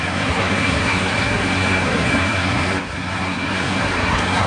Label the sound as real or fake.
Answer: fake